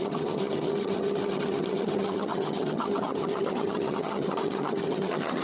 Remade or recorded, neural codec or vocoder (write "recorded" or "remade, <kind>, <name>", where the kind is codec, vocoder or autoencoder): remade, vocoder, HiFi-GAN